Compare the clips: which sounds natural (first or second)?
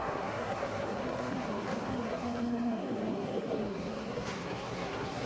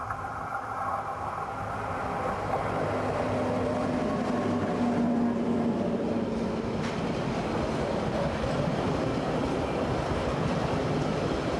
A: second